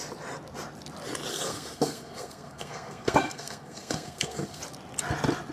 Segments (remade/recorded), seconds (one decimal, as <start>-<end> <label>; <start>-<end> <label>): 0.0-1.3 recorded; 1.3-4.6 remade; 4.6-5.5 recorded